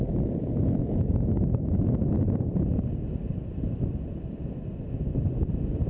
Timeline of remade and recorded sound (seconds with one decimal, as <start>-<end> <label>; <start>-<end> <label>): 0.0-0.8 recorded; 0.8-2.4 remade; 2.4-5.9 recorded